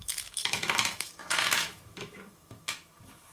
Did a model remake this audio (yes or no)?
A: yes